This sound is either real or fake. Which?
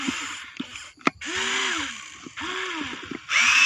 fake